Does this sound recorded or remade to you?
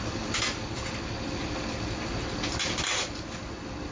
recorded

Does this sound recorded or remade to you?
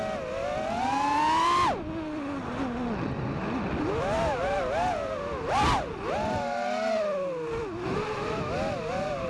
recorded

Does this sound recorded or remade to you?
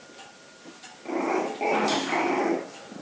recorded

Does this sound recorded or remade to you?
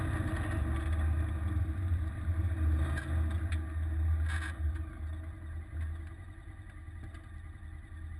recorded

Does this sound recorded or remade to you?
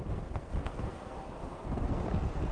remade